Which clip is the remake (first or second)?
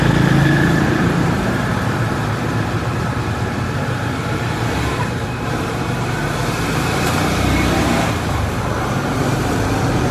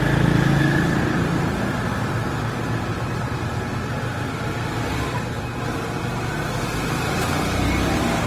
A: first